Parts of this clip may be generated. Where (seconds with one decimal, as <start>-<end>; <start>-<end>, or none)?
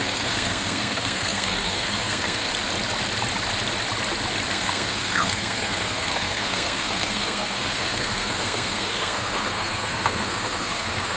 0.0-2.5; 4.5-11.2